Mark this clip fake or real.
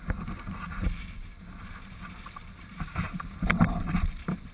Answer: fake